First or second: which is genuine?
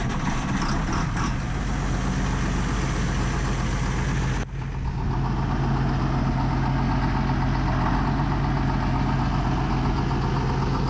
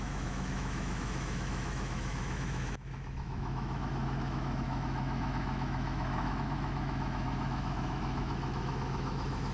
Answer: first